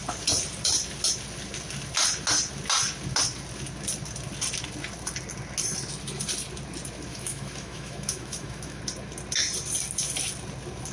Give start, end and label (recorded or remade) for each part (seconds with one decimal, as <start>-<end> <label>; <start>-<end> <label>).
0.0-7.1 recorded; 7.1-8.8 remade; 8.8-10.9 recorded